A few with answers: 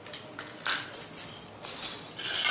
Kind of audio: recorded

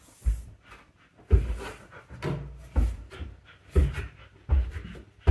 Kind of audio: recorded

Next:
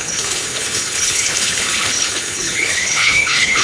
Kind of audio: remade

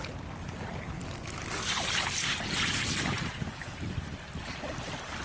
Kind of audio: recorded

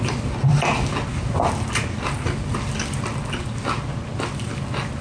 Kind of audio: recorded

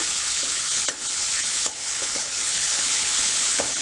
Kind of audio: remade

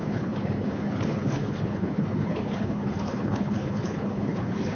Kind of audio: remade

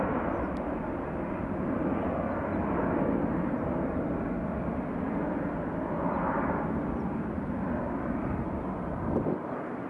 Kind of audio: recorded